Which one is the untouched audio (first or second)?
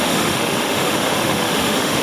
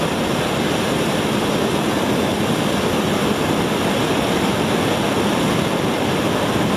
second